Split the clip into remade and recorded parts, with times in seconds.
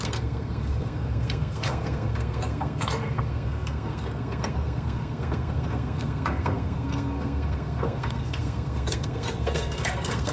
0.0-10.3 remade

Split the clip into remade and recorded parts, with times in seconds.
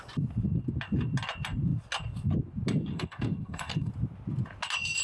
0.0-2.9 recorded; 2.9-3.9 remade; 3.9-5.0 recorded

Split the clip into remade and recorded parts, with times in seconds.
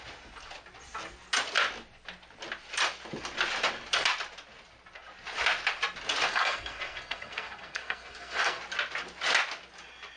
0.0-6.3 recorded; 6.3-8.6 remade; 8.6-10.2 recorded